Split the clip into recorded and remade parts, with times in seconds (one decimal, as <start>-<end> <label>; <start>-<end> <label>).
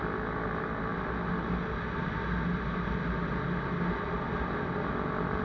0.0-5.4 recorded